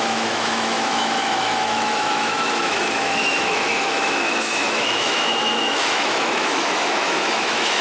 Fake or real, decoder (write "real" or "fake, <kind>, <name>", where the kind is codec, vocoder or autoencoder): fake, autoencoder, DAC-VAE